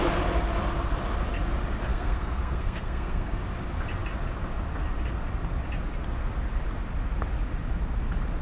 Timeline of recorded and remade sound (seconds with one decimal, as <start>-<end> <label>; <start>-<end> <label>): 0.0-1.9 recorded; 1.9-3.4 remade; 3.4-8.4 recorded